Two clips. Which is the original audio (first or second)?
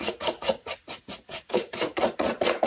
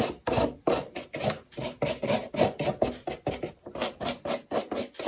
second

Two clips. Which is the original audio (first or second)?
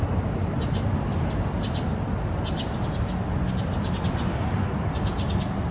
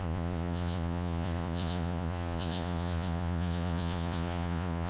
first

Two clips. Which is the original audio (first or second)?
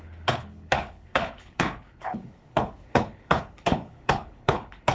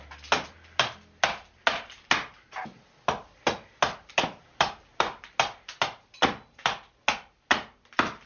second